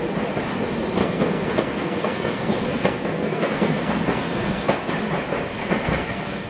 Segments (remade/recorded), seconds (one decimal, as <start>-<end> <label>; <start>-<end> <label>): 0.0-1.0 recorded; 1.0-4.9 remade; 4.9-5.6 recorded; 5.6-6.5 remade